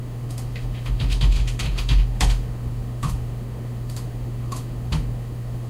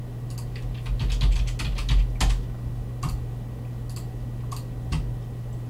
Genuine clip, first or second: second